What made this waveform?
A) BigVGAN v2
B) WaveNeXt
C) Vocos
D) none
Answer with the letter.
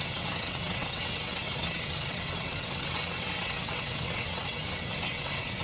B